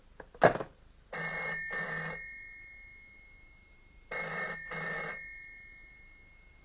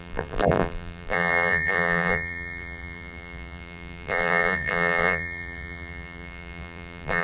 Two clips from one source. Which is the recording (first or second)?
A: first